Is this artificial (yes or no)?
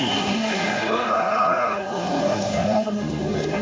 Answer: yes